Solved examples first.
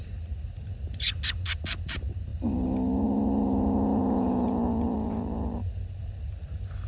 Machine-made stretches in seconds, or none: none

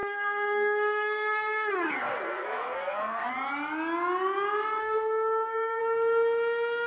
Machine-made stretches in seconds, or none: 0.0-3.3 (codec, SNAC); 4.8-5.8

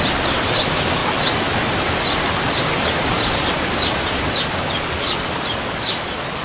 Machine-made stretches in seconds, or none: none

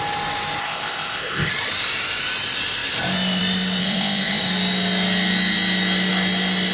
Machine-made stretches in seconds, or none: 0.6-1.5 (codec, ZipCodec); 3.8-4.5

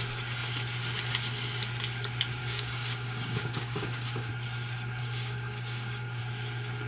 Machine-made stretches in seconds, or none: 2.4-4.3 (codec, DAC); 5.0-6.2

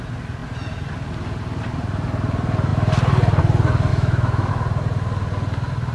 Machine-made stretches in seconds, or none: 3.9-4.5 (autoencoder, DAC-VAE)

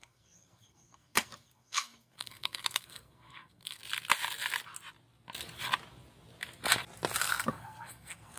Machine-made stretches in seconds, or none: 0.0-3.8 (codec, SNAC); 7.2-8.4